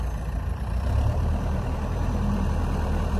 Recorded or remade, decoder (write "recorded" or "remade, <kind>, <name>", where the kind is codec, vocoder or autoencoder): remade, vocoder, BigVGAN v2